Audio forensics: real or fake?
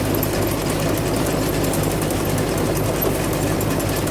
real